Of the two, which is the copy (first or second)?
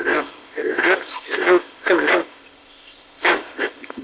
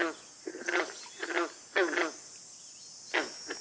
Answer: first